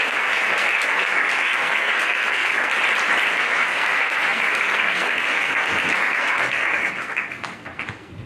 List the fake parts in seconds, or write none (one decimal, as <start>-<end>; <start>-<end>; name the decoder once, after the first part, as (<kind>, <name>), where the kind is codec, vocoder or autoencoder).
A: 0.0-2.7 (codec, SNAC); 3.3-8.3

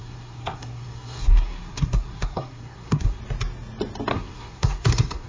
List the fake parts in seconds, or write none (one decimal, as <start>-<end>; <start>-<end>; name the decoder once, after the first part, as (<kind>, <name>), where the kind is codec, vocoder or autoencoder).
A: 0.0-3.2 (codec, SNAC); 4.1-5.3

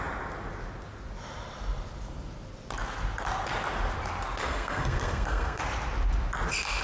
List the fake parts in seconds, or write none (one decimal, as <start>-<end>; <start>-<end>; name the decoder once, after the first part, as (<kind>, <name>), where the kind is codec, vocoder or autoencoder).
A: 4.4-5.6 (codec, SNAC)

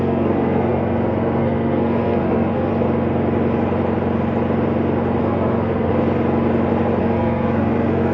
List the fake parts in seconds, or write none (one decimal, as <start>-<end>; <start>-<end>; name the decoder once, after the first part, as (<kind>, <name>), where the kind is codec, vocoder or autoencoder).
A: 0.0-2.7 (codec, SNAC); 5.2-5.9; 7.0-8.1

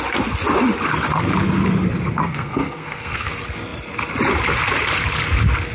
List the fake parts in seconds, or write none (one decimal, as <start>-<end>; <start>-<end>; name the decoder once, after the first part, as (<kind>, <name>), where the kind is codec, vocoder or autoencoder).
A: 2.2-3.3 (codec, SNAC)

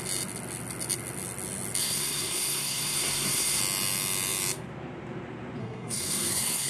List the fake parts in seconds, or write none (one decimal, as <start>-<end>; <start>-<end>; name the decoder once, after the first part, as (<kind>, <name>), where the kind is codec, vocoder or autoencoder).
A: 1.8-3.6 (codec, SNAC); 5.6-6.7